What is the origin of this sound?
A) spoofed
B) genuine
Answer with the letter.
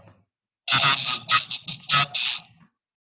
B